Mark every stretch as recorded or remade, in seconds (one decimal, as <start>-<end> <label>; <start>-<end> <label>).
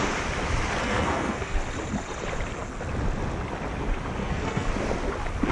0.0-0.8 recorded; 0.8-1.6 remade; 1.6-4.2 recorded; 4.2-4.7 remade; 4.7-5.5 recorded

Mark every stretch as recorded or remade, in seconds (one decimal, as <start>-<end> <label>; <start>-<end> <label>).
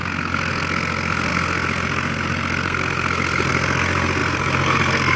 0.0-5.2 remade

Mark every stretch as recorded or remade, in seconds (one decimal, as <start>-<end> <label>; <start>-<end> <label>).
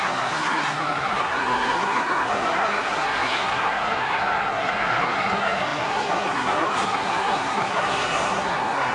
0.0-8.9 remade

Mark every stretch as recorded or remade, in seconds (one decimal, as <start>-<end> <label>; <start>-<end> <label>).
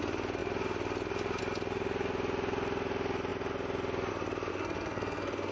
0.0-4.5 recorded; 4.5-5.5 remade